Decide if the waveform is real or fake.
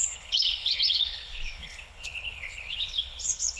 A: fake